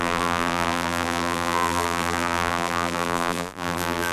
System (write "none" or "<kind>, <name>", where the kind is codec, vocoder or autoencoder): vocoder, BigVGAN v2